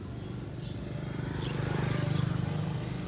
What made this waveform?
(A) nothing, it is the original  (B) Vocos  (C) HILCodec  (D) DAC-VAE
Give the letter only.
A